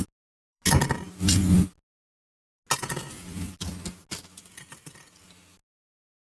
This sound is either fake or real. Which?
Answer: real